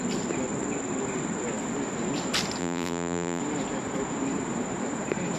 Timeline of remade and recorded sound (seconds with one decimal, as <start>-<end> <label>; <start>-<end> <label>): 0.0-2.6 recorded; 2.6-3.4 remade; 3.4-5.4 recorded